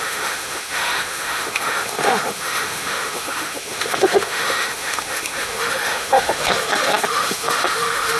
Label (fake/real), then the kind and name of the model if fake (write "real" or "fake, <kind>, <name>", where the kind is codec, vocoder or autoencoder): fake, autoencoder, DAC-VAE